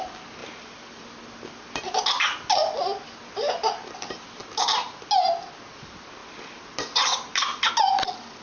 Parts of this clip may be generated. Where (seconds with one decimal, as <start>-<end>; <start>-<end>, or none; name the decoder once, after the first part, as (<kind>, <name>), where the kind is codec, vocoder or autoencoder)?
0.4-1.8 (vocoder, BigVGAN v2); 6.2-7.7